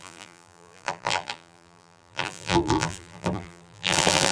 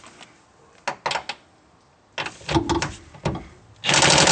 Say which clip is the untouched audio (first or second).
second